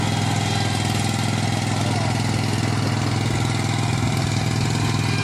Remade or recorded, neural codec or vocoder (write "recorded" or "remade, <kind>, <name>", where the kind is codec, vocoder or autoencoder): recorded